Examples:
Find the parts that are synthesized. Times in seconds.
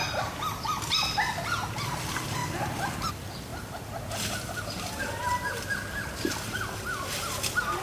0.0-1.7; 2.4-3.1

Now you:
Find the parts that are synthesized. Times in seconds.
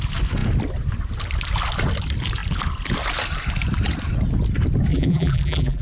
4.9-5.8